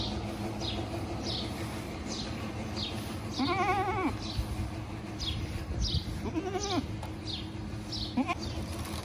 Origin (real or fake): real